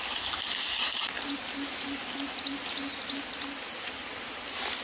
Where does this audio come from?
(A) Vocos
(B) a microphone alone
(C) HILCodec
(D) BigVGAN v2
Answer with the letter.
B